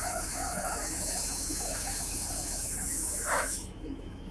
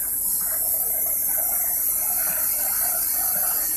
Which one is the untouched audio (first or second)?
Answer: second